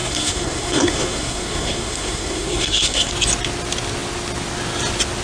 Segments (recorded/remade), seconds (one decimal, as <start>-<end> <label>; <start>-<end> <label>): 0.0-3.1 remade; 3.1-5.2 recorded